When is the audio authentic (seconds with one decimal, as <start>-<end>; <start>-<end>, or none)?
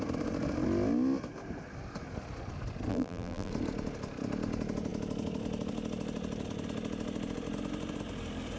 0.0-2.9; 3.5-8.6